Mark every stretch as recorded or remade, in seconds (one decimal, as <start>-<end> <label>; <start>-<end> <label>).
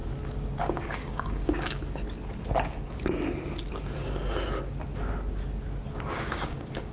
0.0-0.6 recorded; 0.6-1.8 remade; 1.8-5.9 recorded; 5.9-6.9 remade